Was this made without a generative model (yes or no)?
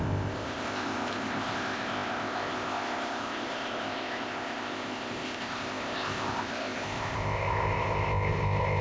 no